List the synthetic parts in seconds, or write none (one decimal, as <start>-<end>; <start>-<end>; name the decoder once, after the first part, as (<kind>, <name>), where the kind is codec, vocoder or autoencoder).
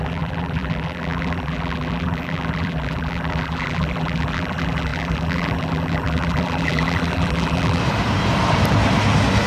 0.0-7.8 (vocoder, BigVGAN v2)